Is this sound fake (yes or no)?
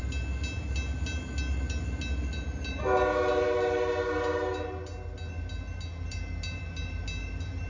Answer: no